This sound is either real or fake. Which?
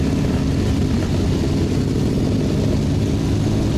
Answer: real